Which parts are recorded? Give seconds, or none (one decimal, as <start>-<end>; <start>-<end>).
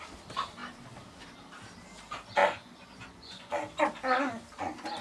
0.0-2.4; 3.6-5.0